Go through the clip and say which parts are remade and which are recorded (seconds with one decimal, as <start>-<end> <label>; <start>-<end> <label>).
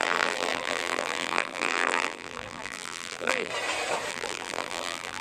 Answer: 0.0-3.5 remade; 3.5-4.1 recorded; 4.1-5.2 remade